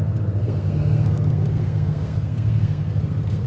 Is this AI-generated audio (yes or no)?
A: yes